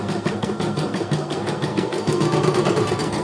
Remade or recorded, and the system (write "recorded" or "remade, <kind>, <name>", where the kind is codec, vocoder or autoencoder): remade, codec, SNAC